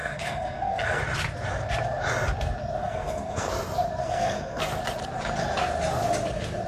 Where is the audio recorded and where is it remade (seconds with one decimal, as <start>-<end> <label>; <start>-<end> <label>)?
0.0-1.0 remade; 1.0-2.8 recorded; 2.8-3.5 remade; 3.5-4.0 recorded; 4.0-4.6 remade; 4.6-6.7 recorded